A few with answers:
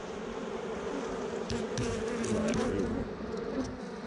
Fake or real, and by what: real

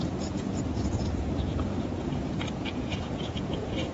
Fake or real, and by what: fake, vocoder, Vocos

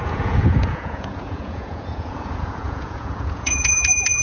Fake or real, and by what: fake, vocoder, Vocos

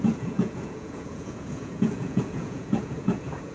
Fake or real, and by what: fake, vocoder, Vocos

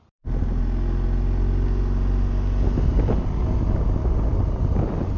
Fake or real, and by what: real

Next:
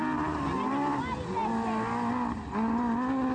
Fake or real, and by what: real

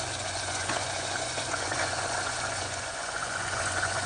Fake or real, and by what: fake, vocoder, Vocos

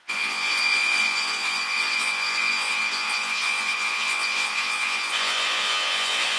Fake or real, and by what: fake, vocoder, Vocos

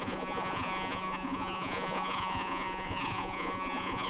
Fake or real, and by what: fake, vocoder, Vocos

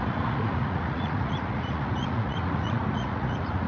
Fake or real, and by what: fake, vocoder, Vocos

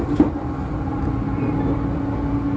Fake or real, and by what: real